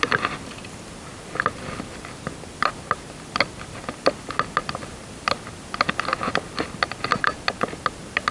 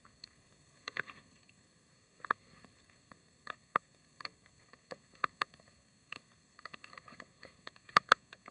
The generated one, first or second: second